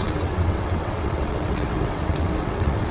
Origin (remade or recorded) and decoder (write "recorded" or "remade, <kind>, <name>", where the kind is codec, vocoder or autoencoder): remade, vocoder, WaveNeXt